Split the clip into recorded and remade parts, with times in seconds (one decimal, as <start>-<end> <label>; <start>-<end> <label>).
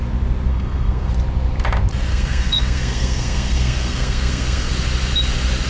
0.0-0.5 recorded; 0.5-1.1 remade; 1.1-2.1 recorded; 2.1-4.7 remade; 4.7-5.7 recorded